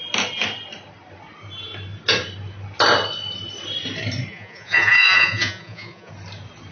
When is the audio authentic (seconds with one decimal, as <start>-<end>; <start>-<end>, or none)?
0.0-4.3; 6.1-6.7